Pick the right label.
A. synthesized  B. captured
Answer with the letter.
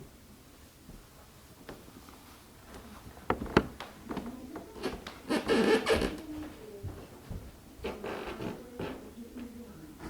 B